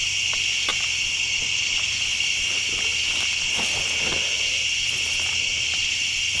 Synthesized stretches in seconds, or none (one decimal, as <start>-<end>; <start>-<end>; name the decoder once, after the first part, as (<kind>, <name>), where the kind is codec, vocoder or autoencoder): none